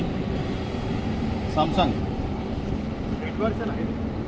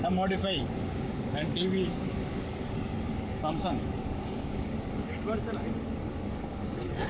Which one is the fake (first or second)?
second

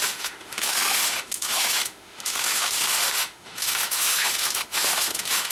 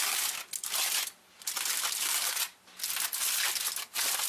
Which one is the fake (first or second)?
first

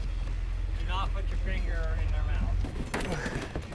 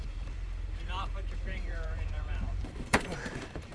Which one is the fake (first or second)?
second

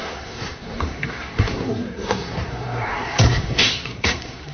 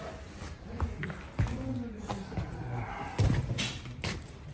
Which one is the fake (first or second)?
first